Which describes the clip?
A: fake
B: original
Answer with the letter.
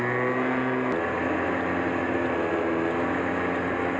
B